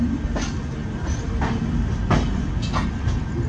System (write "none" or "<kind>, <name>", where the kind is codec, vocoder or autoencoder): none